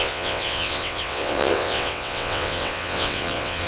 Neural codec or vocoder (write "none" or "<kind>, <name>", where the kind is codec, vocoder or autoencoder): vocoder, WaveNeXt